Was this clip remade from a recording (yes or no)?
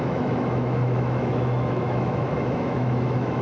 yes